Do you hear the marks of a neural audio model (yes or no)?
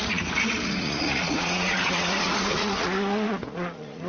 yes